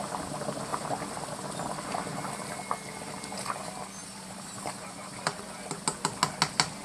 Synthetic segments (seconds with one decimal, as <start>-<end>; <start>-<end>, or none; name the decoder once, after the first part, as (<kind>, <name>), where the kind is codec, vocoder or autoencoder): 4.0-5.4 (vocoder, BigVGAN v2)